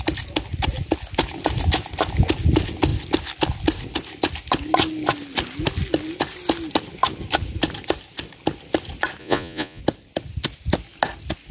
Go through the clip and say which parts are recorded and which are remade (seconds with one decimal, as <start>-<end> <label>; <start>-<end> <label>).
0.0-9.2 recorded; 9.2-9.8 remade; 9.8-11.5 recorded